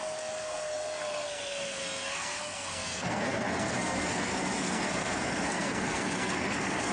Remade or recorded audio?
remade